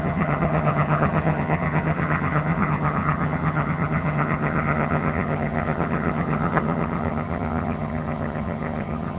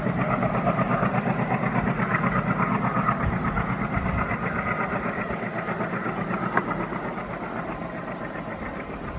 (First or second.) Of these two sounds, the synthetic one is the first